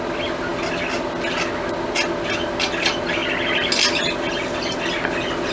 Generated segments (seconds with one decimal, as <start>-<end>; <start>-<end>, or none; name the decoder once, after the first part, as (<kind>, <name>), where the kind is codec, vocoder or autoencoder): none